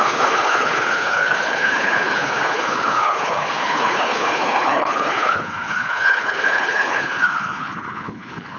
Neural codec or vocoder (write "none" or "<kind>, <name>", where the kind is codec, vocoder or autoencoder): codec, HILCodec